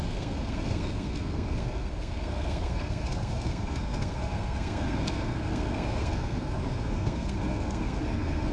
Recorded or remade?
remade